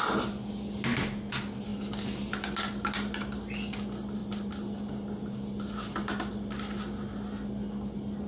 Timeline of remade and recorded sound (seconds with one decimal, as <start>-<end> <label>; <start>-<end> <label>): 0.0-8.3 recorded